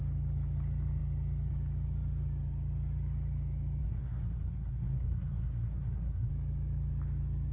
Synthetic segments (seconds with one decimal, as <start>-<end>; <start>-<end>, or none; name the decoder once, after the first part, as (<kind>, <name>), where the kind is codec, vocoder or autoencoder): 3.8-6.3 (codec, SNAC)